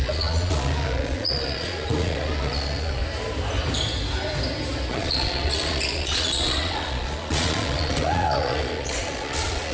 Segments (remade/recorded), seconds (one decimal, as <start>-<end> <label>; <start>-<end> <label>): 0.0-3.0 remade; 3.0-4.9 recorded; 4.9-9.7 remade